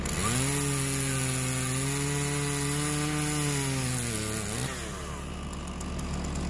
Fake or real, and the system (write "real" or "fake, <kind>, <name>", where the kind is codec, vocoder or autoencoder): real